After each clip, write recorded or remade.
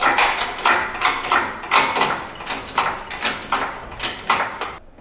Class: recorded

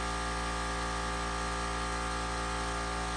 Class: recorded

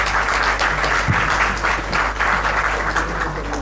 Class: recorded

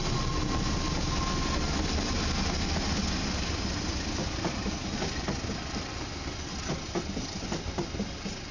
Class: recorded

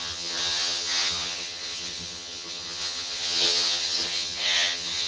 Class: remade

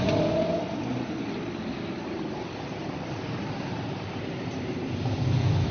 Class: recorded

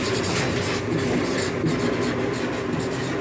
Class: recorded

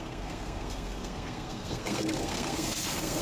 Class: remade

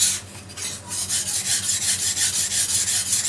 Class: recorded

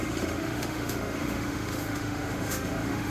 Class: remade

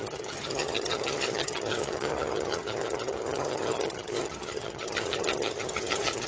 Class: remade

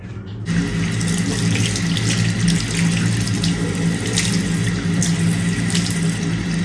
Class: recorded